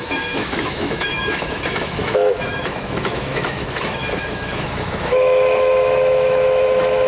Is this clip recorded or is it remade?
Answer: remade